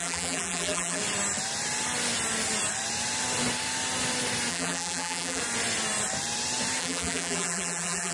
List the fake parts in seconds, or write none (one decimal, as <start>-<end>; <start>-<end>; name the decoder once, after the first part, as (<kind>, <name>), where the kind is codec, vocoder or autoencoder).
0.0-1.0 (vocoder, BigVGAN v2); 4.5-5.4; 6.8-8.1